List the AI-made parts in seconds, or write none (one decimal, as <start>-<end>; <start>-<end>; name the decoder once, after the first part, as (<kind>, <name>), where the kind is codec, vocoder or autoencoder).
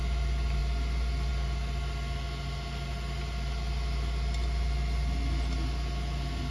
none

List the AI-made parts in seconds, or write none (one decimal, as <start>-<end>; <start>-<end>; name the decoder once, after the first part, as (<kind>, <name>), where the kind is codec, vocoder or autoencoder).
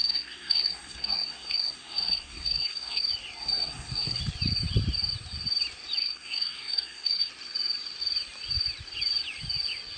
0.0-3.0 (codec, SNAC); 3.4-4.2; 6.0-7.3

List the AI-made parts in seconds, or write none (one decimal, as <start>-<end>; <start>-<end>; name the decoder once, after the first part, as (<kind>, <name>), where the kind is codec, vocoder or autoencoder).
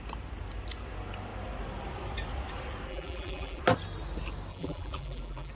2.9-3.6 (vocoder, BigVGAN v2); 4.5-5.5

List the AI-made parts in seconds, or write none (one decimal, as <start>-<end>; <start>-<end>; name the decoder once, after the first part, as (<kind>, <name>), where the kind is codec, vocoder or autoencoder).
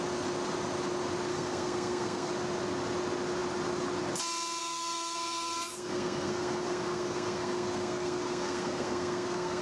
1.3-2.3 (codec, SNAC); 4.6-9.6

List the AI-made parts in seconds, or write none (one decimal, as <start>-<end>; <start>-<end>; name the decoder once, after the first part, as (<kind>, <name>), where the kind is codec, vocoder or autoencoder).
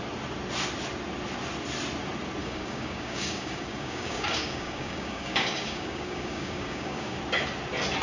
2.4-7.2 (codec, DAC)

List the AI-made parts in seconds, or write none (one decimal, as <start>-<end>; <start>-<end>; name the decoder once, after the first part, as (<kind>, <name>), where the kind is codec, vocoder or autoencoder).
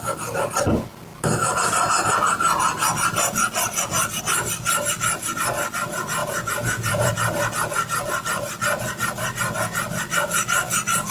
6.2-7.1 (vocoder, Vocos)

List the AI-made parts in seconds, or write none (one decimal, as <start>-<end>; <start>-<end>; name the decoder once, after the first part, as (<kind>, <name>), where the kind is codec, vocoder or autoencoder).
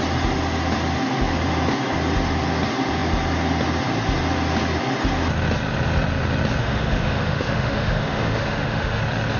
6.6-9.0 (autoencoder, DAC-VAE)